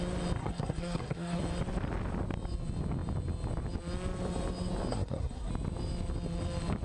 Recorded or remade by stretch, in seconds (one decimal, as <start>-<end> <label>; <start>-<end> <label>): 0.0-0.4 recorded; 0.4-1.4 remade; 1.4-4.9 recorded; 4.9-5.5 remade; 5.5-6.8 recorded